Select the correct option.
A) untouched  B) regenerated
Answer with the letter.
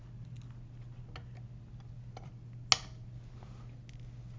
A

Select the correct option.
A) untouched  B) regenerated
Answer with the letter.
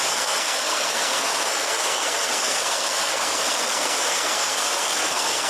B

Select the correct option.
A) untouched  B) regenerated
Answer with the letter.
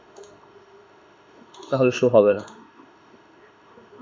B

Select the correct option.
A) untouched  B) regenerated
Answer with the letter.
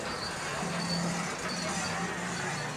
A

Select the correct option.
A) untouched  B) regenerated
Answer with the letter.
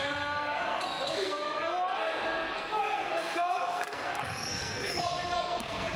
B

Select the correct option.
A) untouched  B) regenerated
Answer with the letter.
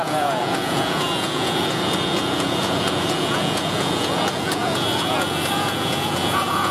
B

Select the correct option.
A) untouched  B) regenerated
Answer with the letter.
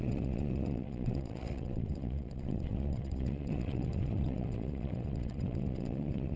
B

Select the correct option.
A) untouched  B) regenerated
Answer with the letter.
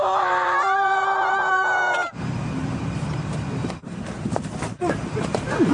B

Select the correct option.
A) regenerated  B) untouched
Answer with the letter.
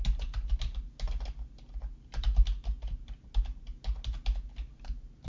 B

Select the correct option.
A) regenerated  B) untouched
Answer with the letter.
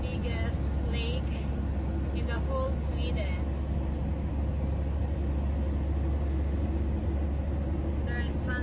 B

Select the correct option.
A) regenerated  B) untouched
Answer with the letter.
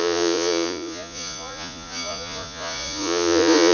A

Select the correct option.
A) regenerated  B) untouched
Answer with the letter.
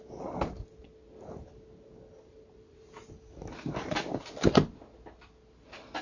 B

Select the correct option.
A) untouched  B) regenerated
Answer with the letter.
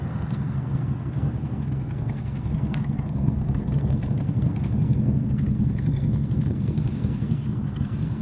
B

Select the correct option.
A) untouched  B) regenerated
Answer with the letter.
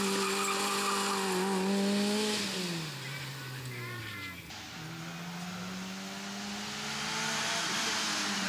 A